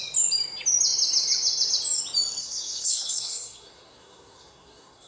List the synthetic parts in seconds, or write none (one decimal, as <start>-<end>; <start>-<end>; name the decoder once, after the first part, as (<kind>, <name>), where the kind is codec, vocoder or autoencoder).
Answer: 2.4-5.1 (codec, SNAC)